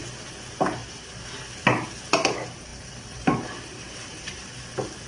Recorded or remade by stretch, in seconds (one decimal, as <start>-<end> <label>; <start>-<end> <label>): 0.0-0.8 recorded; 0.8-1.4 remade; 1.4-2.7 recorded; 2.7-4.5 remade; 4.5-5.1 recorded